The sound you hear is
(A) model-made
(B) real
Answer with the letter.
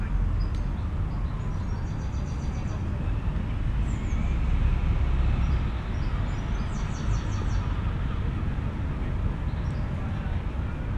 B